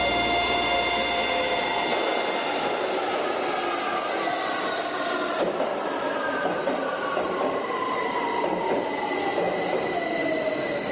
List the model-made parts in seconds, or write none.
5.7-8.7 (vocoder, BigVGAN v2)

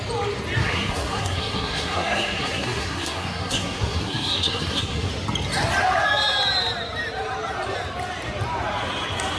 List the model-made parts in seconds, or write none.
0.6-5.1 (codec, SNAC)